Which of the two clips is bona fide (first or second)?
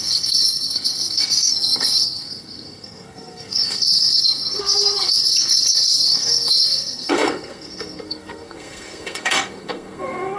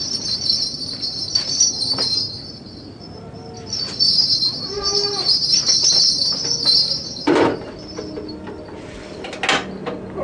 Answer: second